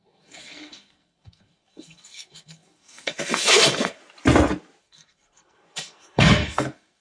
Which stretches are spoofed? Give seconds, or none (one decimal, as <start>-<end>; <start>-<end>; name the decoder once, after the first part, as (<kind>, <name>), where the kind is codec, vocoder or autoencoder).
0.0-4.0 (codec, SNAC); 4.8-7.0